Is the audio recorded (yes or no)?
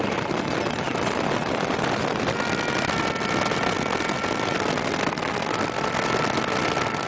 yes